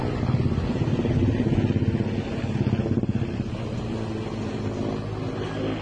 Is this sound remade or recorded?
recorded